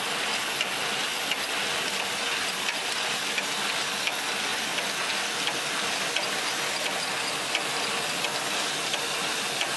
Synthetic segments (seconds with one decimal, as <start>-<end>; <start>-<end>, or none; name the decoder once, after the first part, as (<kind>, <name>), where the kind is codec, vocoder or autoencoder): none